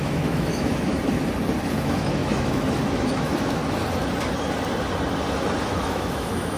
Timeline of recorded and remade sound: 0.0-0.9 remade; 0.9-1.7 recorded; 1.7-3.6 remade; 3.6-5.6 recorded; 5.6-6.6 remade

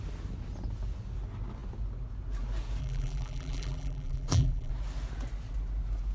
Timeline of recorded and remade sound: 0.0-2.8 recorded; 2.8-4.7 remade; 4.7-6.1 recorded